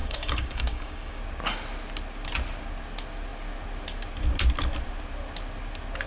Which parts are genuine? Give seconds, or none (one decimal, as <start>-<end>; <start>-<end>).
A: 1.2-6.1

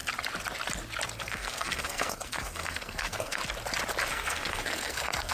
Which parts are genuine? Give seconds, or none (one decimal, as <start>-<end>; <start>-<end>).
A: 0.0-1.2; 3.4-4.1

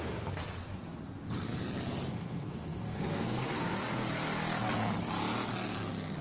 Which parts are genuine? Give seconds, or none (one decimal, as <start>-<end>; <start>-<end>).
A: 0.0-2.1; 3.7-6.2

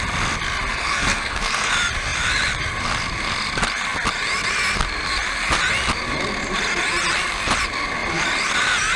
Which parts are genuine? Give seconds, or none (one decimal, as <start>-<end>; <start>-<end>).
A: 0.0-0.7; 1.7-9.0

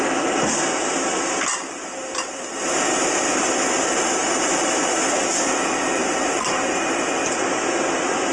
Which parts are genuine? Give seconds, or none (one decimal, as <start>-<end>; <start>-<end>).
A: 0.0-1.8; 5.1-6.0; 6.8-8.3

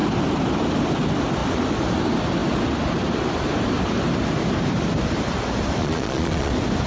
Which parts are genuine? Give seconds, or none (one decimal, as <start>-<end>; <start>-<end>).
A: 0.0-5.8; 6.5-6.9

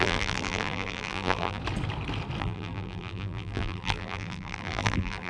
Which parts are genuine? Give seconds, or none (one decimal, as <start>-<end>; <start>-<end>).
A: 1.6-2.4